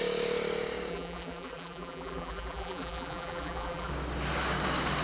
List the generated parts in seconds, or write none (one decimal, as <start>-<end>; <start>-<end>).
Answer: 0.9-3.9